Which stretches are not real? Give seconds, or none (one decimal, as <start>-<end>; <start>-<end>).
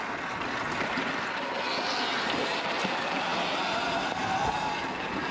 none